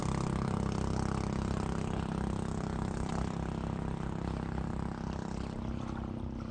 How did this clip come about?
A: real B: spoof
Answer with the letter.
B